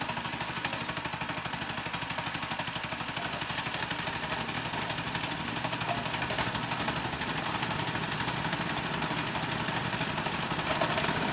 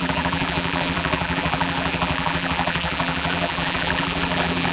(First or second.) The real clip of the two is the first